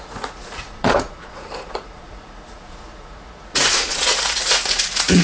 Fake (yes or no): yes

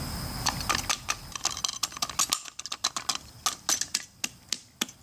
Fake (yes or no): no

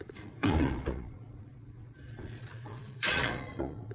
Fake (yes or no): yes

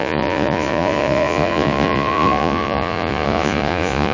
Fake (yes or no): yes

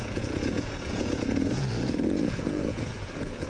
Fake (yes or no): yes